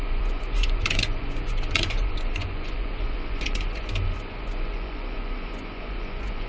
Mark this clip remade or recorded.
remade